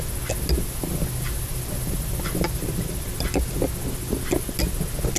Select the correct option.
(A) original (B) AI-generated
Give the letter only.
A